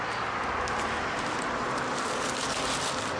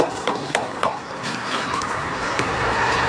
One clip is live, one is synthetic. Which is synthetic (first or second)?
second